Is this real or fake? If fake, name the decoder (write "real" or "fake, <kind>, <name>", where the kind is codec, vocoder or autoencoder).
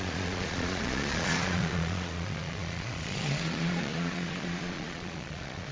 fake, vocoder, Vocos